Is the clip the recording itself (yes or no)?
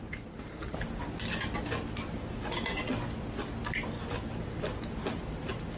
yes